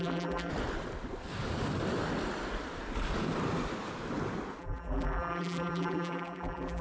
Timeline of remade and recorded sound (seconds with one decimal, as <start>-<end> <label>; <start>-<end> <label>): 0.0-0.5 remade; 0.5-4.6 recorded; 4.6-6.8 remade